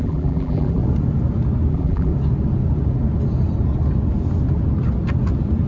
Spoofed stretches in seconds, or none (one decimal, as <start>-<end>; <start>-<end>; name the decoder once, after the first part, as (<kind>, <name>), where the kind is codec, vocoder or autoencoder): 0.0-0.8 (vocoder, BigVGAN v2); 1.7-2.1